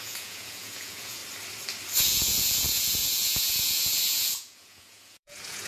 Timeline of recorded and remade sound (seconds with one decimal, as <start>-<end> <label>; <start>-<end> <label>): 0.0-1.2 remade; 1.2-2.0 recorded; 2.0-5.7 remade